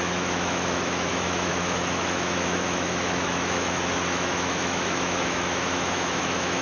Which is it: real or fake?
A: fake